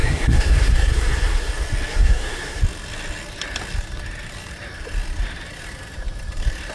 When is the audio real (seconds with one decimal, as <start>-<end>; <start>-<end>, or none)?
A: 1.5-1.9; 2.6-6.7